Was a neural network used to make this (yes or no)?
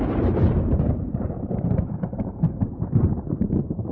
yes